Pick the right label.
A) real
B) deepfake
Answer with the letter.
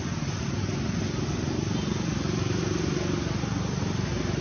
A